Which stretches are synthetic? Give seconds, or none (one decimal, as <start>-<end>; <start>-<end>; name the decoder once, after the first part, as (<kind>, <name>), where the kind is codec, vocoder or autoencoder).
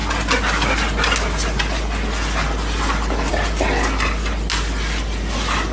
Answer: none